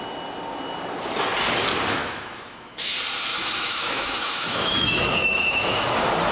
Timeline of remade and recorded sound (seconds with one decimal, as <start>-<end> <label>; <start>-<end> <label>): 0.0-2.0 recorded; 2.0-2.9 remade; 2.9-3.3 recorded; 3.3-5.8 remade; 5.8-6.3 recorded